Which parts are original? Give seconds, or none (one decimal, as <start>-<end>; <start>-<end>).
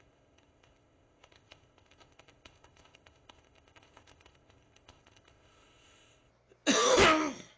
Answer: 6.3-7.6